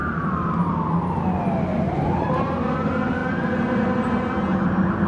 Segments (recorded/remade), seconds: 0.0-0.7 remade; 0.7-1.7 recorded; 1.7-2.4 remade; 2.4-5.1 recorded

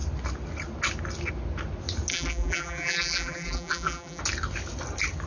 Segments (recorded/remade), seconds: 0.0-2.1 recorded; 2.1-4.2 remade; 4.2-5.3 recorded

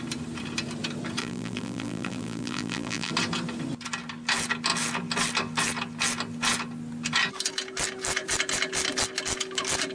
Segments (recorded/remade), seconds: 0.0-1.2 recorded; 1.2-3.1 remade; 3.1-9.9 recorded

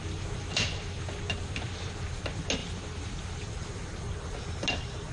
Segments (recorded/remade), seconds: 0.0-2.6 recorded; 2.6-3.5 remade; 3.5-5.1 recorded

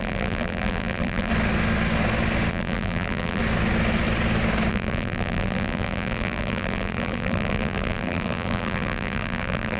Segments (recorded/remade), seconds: 0.0-1.3 remade; 1.3-2.5 recorded; 2.5-3.4 remade; 3.4-4.7 recorded; 4.7-9.8 remade